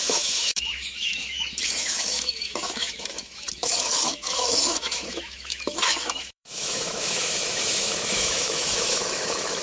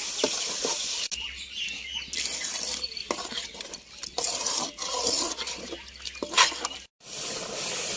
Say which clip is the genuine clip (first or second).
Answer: second